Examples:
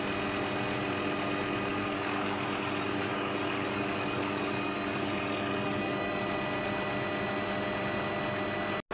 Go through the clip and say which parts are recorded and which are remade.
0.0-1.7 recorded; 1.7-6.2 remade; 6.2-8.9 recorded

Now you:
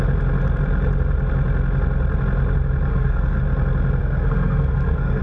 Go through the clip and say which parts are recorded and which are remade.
0.0-2.9 recorded; 2.9-3.4 remade; 3.4-4.0 recorded; 4.0-5.2 remade

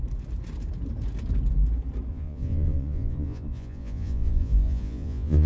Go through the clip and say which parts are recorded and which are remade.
0.0-2.1 recorded; 2.1-5.5 remade